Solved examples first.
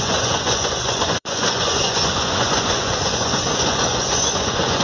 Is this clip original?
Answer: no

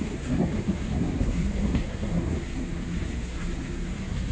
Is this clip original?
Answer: no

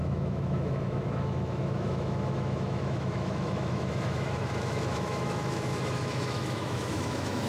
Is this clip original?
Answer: no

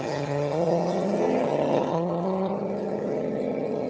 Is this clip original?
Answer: no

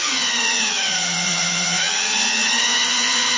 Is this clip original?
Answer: no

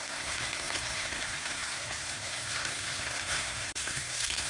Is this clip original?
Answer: no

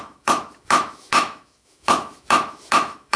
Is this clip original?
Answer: no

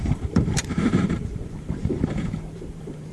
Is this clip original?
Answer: no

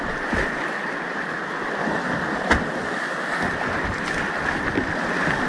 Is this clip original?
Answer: yes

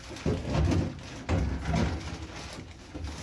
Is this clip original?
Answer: yes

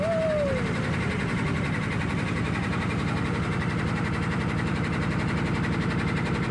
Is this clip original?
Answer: yes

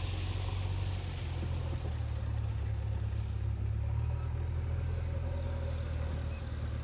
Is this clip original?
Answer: yes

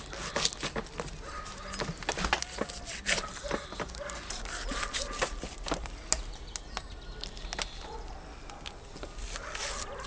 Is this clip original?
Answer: yes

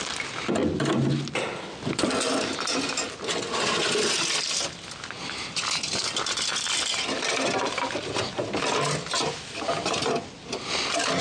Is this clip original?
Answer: yes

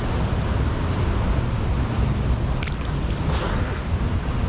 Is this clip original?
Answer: yes